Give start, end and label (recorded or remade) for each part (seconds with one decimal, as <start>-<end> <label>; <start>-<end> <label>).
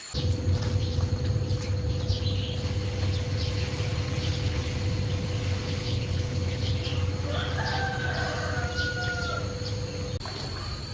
0.0-5.8 recorded; 5.8-6.7 remade; 6.7-10.9 recorded